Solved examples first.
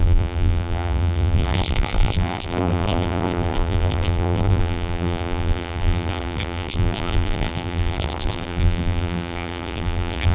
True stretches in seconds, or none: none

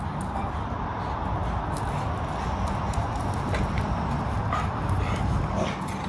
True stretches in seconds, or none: 0.0-6.1

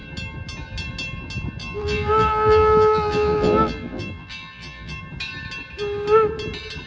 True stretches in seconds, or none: 0.0-1.6; 5.0-6.9

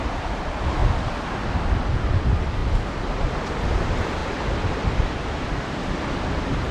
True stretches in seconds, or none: 0.8-2.2; 2.6-3.8; 4.2-5.4

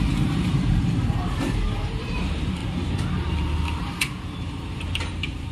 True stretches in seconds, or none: 2.6-3.8

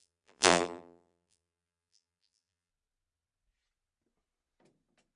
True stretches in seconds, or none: 2.7-5.2

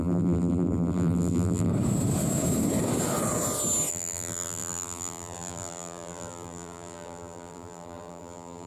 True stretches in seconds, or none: 1.7-3.9